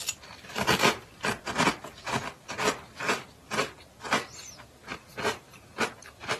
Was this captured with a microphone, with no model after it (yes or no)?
yes